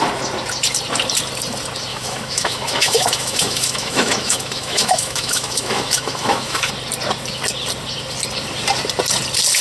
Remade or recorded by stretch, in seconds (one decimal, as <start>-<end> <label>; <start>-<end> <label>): 0.0-1.9 recorded; 1.9-6.7 remade; 6.7-9.6 recorded